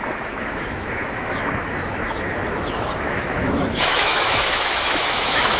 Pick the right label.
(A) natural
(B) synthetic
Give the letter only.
B